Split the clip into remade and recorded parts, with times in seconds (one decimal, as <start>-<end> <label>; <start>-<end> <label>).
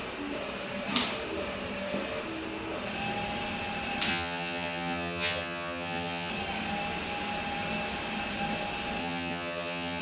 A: 0.0-4.1 recorded; 4.1-6.3 remade; 6.3-9.0 recorded; 9.0-10.0 remade